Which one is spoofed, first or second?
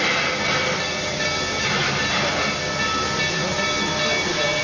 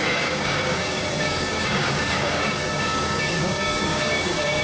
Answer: second